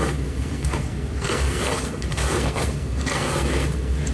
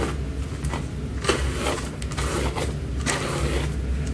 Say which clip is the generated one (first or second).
first